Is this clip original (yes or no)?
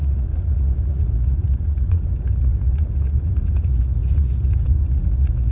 no